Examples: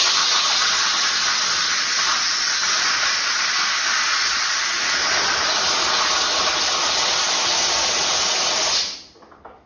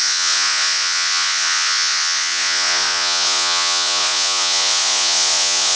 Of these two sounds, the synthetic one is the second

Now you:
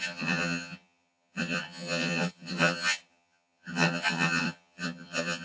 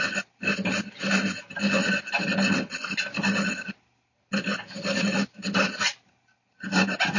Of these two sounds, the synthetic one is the first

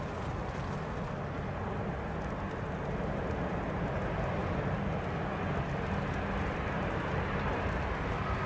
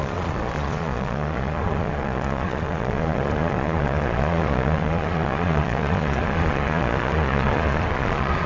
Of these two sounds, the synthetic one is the second